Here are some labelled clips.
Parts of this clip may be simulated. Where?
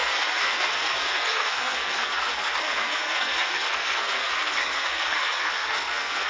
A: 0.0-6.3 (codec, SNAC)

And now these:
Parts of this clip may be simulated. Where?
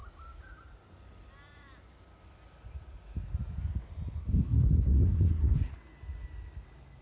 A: 4.2-5.7 (codec, SNAC)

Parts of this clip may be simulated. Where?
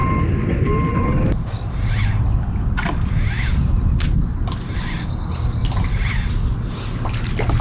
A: none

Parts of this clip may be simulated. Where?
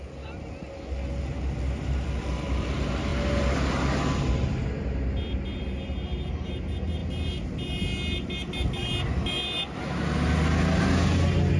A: none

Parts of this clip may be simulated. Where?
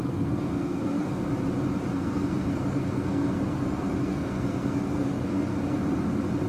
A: 0.0-1.3 (codec, SNAC); 1.9-5.8